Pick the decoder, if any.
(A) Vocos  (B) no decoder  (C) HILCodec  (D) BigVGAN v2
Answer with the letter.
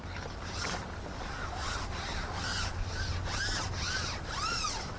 B